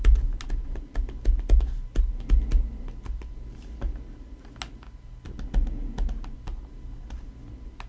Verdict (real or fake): real